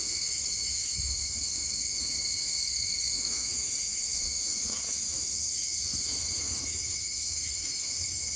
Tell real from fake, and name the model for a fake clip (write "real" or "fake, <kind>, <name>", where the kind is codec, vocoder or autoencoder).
fake, autoencoder, DAC-VAE